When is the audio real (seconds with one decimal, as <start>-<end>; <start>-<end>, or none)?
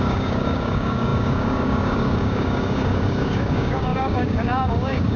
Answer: none